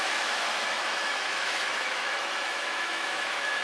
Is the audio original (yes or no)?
no